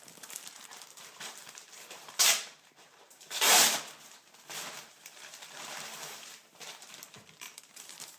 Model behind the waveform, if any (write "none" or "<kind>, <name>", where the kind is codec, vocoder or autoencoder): vocoder, BigVGAN v2